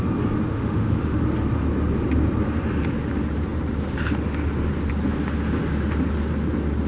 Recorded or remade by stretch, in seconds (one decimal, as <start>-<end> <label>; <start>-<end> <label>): 0.0-0.5 recorded; 0.5-1.2 remade; 1.2-6.9 recorded